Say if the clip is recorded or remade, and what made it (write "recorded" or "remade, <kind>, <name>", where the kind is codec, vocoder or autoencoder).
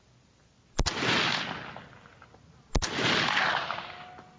recorded